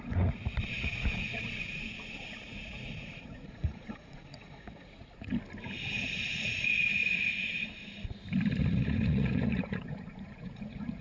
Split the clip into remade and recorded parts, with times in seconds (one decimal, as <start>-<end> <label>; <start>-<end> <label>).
0.0-5.3 remade; 5.3-5.9 recorded; 5.9-7.0 remade; 7.0-8.6 recorded; 8.6-11.0 remade